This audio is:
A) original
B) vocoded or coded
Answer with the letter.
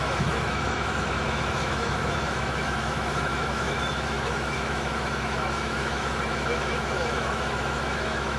B